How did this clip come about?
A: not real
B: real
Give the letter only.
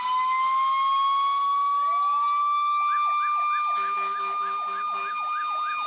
B